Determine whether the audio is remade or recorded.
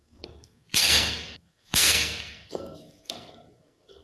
remade